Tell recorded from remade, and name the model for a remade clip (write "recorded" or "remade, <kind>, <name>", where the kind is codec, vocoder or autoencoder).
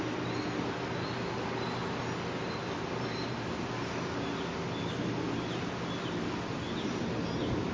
recorded